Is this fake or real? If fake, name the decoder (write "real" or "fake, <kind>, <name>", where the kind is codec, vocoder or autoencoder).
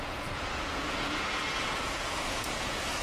fake, vocoder, Vocos